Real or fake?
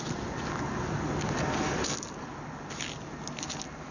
real